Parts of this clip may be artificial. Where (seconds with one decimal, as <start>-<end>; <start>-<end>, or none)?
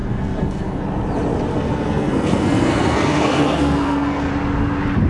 0.0-0.8; 1.5-4.3